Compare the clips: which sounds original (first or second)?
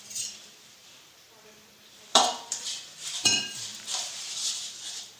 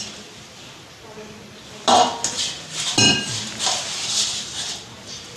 second